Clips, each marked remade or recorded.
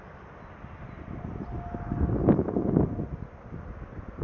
recorded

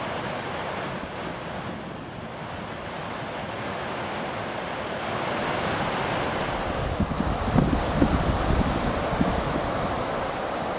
recorded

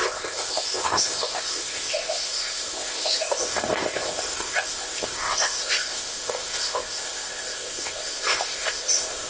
remade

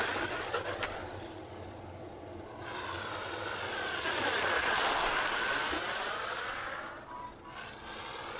recorded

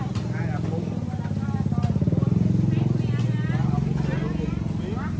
recorded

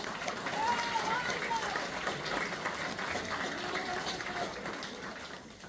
recorded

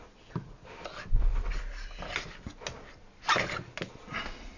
recorded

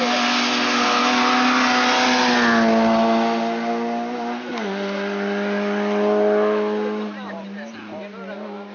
recorded